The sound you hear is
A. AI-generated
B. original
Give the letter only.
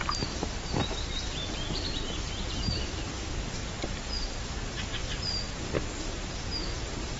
A